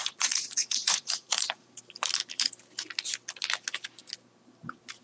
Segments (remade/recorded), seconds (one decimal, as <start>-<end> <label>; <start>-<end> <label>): 0.0-1.8 remade; 1.8-5.0 recorded